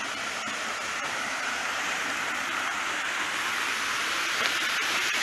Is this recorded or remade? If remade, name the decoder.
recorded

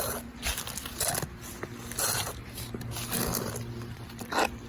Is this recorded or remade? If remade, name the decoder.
recorded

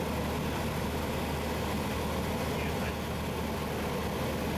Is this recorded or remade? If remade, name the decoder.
recorded